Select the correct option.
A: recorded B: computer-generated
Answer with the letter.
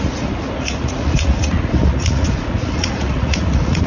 B